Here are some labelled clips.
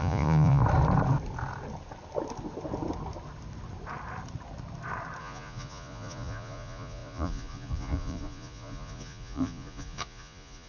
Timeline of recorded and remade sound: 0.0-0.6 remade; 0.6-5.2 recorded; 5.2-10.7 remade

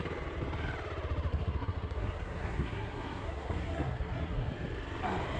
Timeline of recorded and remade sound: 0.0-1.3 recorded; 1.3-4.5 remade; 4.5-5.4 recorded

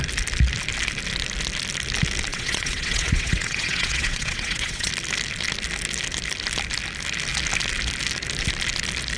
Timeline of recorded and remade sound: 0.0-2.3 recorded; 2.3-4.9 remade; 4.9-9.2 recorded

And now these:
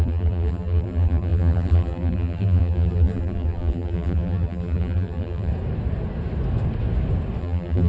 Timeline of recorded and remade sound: 0.0-5.5 remade; 5.5-7.4 recorded; 7.4-7.9 remade

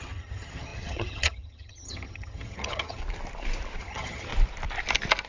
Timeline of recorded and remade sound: 0.0-3.0 remade; 3.0-3.8 recorded; 3.8-4.3 remade; 4.3-5.3 recorded

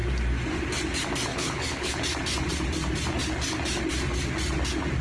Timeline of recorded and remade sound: 0.0-1.3 recorded; 1.3-2.0 remade; 2.0-5.0 recorded

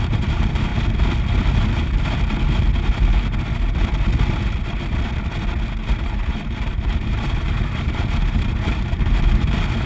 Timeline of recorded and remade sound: 0.0-0.7 remade; 0.7-6.0 recorded; 6.0-9.9 remade